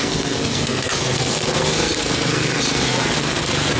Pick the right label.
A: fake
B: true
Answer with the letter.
A